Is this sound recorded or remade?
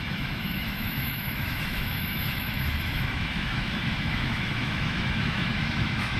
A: remade